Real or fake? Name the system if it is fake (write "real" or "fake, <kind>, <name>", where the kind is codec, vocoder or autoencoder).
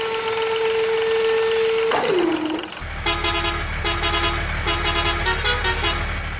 real